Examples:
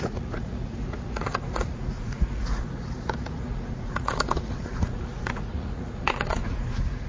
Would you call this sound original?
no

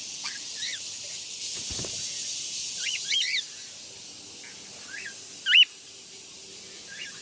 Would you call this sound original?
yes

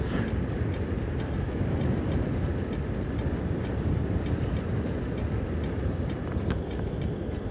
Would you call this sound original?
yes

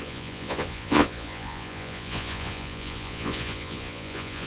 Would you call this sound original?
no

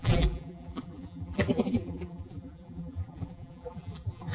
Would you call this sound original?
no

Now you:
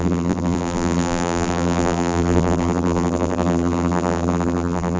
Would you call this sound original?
no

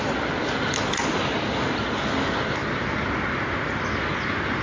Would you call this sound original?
yes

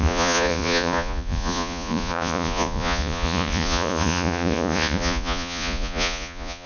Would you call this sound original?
no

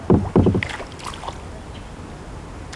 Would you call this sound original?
yes